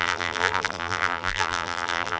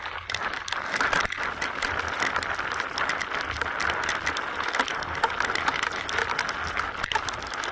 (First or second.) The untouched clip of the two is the second